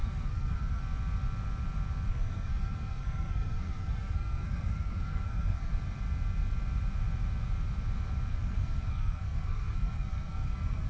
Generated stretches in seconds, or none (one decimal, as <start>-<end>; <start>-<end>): 0.0-0.8; 2.1-5.7; 8.3-10.9